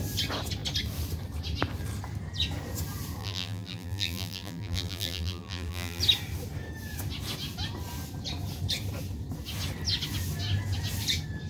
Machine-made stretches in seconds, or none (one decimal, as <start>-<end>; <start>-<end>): 3.2-6.0